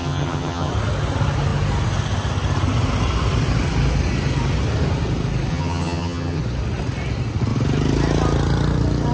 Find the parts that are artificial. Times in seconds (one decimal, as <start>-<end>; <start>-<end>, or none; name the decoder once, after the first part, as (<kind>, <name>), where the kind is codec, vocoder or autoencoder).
0.0-0.7 (vocoder, HiFi-GAN); 5.5-6.4